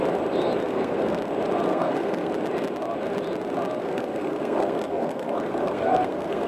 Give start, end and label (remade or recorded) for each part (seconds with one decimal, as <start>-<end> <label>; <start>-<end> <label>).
0.0-0.7 recorded; 0.7-1.2 remade; 1.2-1.7 recorded; 1.7-2.3 remade; 2.3-3.8 recorded; 3.8-6.5 remade